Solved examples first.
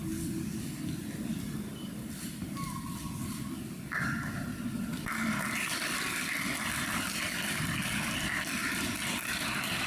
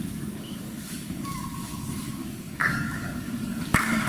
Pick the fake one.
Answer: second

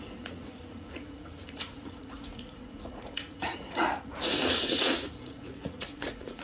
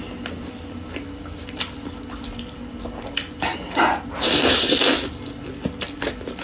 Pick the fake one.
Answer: first